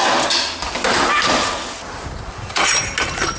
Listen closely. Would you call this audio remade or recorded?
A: recorded